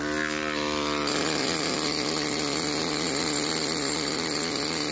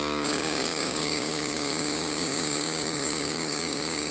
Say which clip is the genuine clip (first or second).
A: first